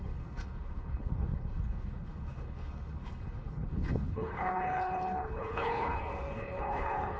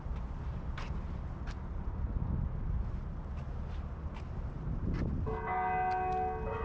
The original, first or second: second